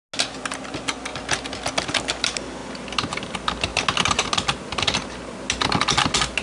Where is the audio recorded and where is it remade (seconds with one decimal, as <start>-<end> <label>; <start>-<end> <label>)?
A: 0.0-6.4 recorded